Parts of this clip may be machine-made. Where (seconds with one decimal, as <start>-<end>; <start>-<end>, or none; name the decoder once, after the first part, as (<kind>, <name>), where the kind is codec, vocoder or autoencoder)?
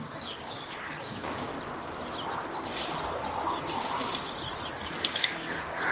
0.0-1.5 (codec, DAC); 5.0-5.9